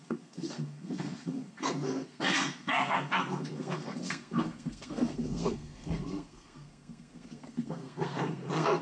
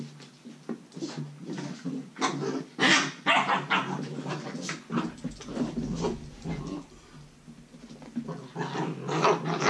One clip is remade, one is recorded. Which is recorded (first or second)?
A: second